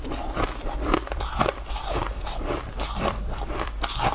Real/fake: fake